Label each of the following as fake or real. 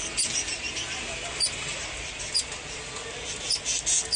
real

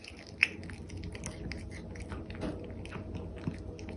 real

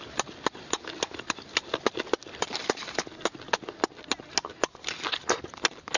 real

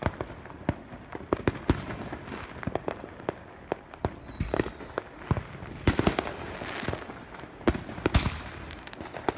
real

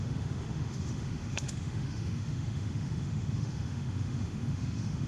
fake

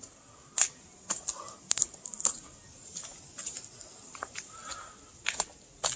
real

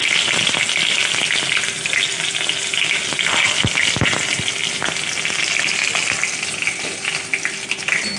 real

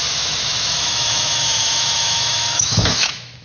fake